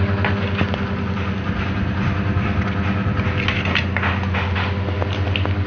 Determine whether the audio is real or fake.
real